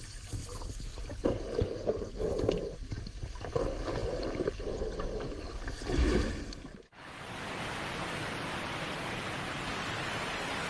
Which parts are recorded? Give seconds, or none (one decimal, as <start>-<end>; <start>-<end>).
0.0-0.4; 1.0-1.6; 2.2-6.7; 7.2-10.7